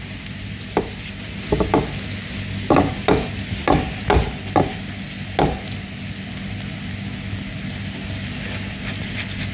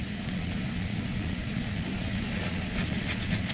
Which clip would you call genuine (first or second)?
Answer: first